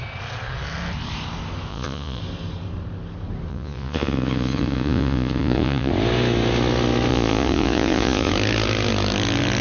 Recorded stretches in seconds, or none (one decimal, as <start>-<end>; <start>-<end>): 0.0-1.7; 2.2-3.5; 5.9-7.1; 8.3-9.6